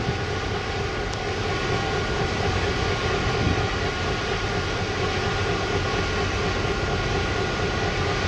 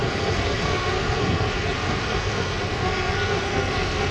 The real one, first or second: first